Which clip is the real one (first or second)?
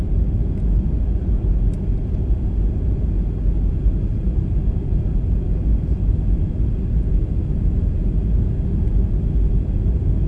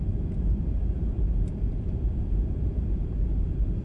first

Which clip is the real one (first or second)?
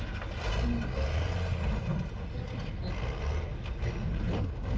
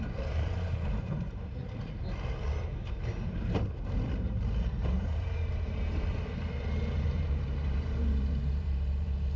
first